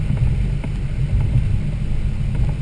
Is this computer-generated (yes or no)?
no